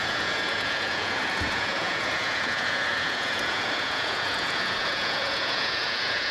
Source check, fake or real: fake